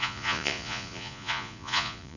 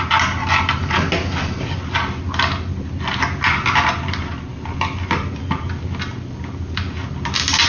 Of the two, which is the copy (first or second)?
first